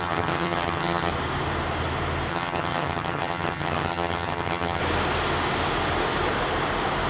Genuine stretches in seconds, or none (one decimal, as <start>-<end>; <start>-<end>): 1.1-2.3; 4.8-7.1